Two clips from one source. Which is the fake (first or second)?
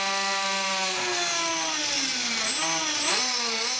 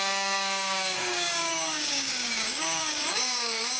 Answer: second